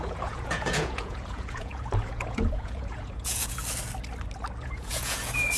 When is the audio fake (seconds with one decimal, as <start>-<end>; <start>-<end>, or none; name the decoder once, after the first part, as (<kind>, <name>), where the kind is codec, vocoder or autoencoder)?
0.0-3.6 (vocoder, Vocos); 4.6-5.6